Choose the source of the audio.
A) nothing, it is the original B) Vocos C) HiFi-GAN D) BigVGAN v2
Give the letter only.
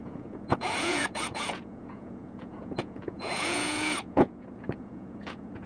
B